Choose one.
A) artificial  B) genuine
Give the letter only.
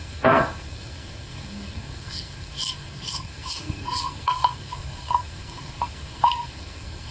A